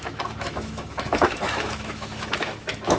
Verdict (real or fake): fake